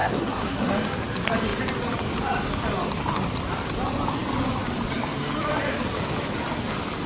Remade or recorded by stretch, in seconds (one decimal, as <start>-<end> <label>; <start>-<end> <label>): 0.0-0.7 remade; 0.7-7.1 recorded